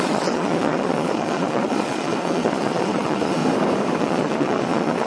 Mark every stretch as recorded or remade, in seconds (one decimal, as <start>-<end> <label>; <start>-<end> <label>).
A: 0.0-3.4 remade; 3.4-4.0 recorded; 4.0-5.1 remade

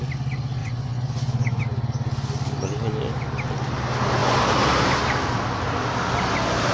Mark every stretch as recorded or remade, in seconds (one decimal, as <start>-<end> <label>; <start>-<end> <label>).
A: 0.0-0.6 recorded; 0.6-1.6 remade; 1.6-6.7 recorded

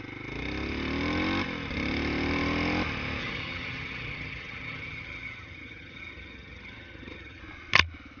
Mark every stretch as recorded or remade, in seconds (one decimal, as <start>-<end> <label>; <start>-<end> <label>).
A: 0.0-3.2 recorded; 3.2-7.4 remade; 7.4-8.2 recorded

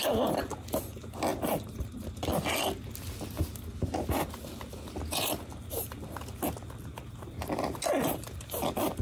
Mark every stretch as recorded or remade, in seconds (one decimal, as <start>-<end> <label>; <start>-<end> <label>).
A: 0.0-9.0 recorded

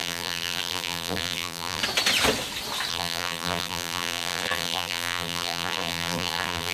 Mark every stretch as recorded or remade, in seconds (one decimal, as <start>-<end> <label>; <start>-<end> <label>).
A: 0.0-1.8 remade; 1.8-2.9 recorded; 2.9-6.7 remade

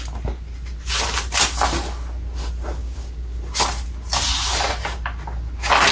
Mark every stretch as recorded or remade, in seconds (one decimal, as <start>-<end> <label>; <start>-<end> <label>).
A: 0.0-2.8 recorded; 2.8-3.4 remade; 3.4-5.9 recorded